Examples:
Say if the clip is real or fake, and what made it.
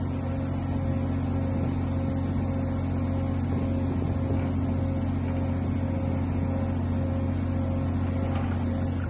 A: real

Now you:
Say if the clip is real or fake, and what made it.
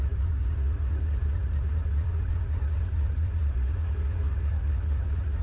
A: fake, vocoder, Vocos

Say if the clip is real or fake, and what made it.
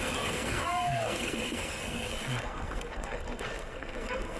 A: fake, codec, SNAC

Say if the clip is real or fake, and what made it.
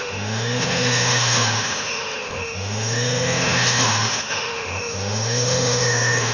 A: fake, autoencoder, DAC-VAE